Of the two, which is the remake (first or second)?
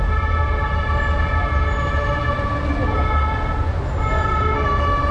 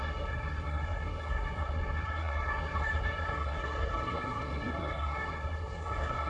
second